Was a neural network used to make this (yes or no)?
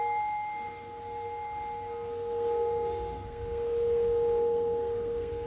yes